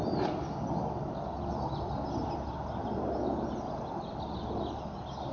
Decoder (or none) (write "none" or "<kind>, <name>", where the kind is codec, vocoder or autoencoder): none